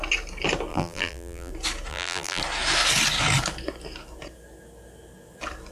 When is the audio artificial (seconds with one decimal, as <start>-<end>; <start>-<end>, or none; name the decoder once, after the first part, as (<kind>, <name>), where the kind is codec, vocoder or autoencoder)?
0.7-1.5 (vocoder, BigVGAN v2); 1.9-2.4